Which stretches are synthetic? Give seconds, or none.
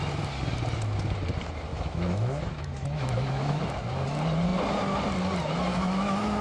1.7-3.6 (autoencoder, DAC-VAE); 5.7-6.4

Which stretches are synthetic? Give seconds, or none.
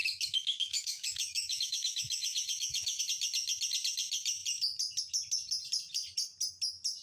0.0-3.0 (autoencoder, DAC-VAE)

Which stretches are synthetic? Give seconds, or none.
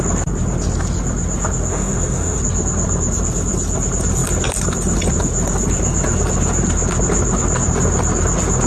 1.7-2.4 (autoencoder, DAC-VAE)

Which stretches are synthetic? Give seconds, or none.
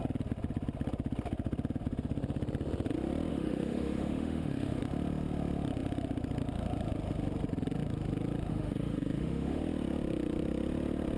3.3-4.8 (autoencoder, DAC-VAE); 8.5-9.6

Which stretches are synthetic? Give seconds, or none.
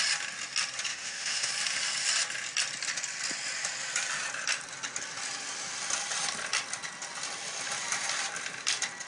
0.9-1.5 (autoencoder, DAC-VAE)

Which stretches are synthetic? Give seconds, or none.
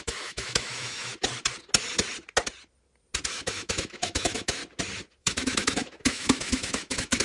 0.0-1.1 (autoencoder, DAC-VAE); 3.3-4.6; 5.2-7.2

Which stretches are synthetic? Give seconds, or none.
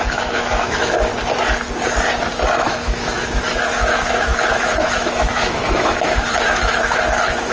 0.0-1.1 (autoencoder, DAC-VAE); 2.6-7.5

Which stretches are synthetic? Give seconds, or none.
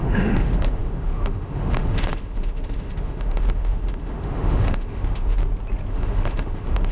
0.0-5.4 (autoencoder, DAC-VAE); 5.9-6.9